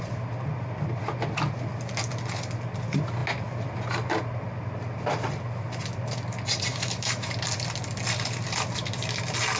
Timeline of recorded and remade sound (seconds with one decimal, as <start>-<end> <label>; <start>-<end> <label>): 0.0-6.7 recorded; 6.7-7.3 remade; 7.3-9.6 recorded